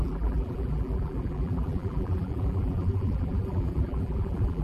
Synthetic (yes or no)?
yes